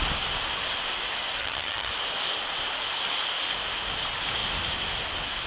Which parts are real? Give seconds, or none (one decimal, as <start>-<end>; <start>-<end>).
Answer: 0.0-1.4; 1.9-5.5